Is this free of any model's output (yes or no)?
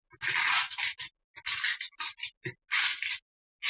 yes